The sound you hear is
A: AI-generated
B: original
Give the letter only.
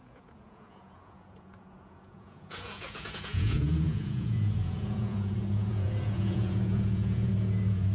A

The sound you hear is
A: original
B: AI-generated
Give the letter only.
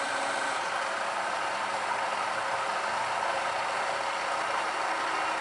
A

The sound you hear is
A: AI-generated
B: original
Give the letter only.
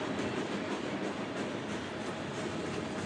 B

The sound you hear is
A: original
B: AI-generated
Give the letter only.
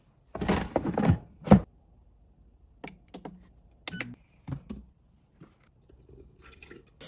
A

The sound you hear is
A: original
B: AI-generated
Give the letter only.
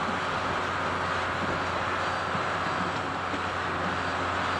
A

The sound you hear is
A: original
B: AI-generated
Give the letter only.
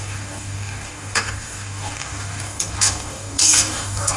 B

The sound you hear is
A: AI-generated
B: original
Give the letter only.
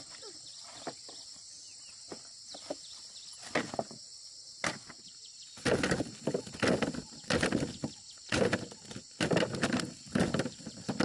B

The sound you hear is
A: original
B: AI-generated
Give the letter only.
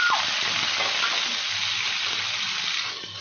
A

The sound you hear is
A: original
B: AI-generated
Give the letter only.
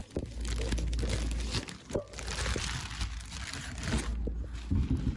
A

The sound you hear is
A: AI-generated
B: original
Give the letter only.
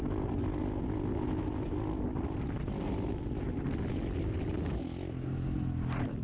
B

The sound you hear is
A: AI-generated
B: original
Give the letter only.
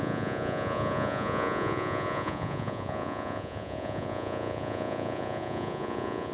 A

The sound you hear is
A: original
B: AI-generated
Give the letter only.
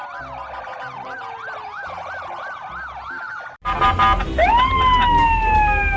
A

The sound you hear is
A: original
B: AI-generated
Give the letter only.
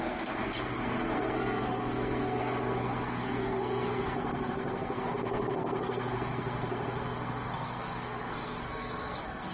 B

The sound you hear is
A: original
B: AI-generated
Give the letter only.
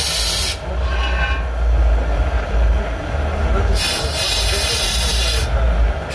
A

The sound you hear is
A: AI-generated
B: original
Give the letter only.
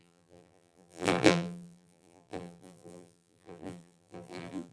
A